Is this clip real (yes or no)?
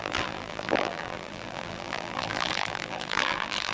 no